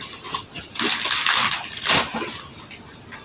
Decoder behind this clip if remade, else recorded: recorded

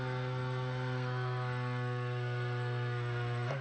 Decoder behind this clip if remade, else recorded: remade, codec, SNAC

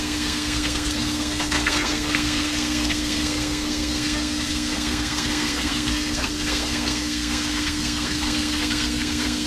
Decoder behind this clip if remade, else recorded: remade, codec, SNAC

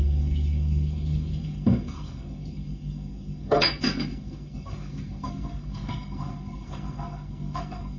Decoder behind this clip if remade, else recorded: remade, codec, SNAC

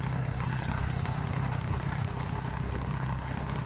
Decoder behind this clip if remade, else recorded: remade, codec, SNAC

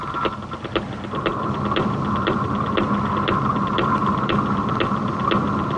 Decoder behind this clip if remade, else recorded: recorded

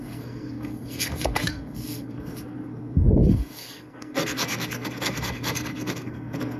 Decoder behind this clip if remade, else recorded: remade, codec, SNAC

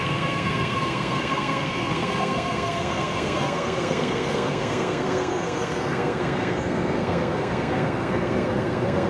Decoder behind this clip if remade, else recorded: remade, codec, SNAC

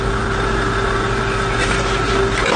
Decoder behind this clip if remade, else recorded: recorded